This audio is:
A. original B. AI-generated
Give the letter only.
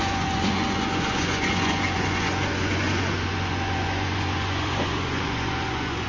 B